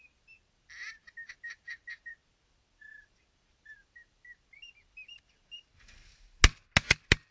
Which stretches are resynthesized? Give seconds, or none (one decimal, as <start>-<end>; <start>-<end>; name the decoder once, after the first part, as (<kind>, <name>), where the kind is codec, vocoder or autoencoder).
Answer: 0.0-5.7 (vocoder, BigVGAN v2)